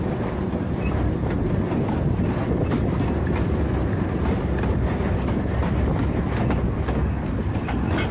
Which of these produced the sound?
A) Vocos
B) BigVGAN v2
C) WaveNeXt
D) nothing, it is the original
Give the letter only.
D